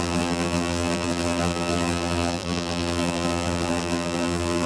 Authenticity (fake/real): fake